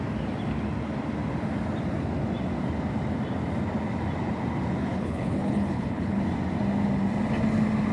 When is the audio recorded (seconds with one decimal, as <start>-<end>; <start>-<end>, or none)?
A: 0.0-4.8; 6.2-7.9